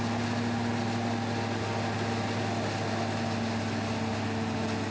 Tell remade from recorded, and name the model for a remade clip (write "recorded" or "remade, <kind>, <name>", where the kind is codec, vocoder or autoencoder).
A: recorded